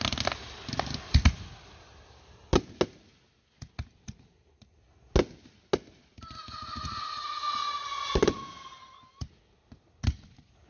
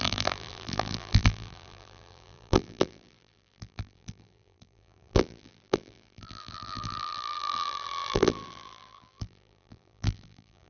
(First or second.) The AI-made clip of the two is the second